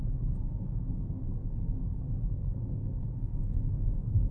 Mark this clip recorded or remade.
remade